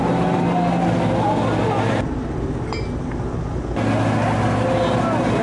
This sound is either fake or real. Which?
real